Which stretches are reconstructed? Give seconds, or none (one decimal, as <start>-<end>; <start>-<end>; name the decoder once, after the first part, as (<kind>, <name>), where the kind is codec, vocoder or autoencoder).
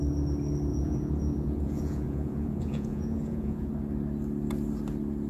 0.7-3.7 (vocoder, Vocos)